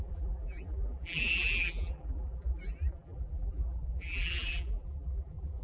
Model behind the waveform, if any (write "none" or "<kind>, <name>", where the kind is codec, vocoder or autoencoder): vocoder, BigVGAN v2